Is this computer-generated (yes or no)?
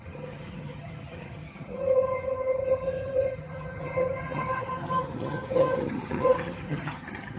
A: yes